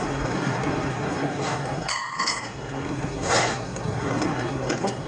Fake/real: fake